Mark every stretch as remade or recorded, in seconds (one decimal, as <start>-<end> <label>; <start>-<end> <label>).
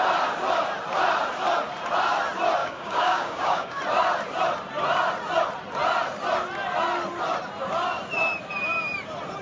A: 0.0-2.6 recorded; 2.6-3.8 remade; 3.8-9.4 recorded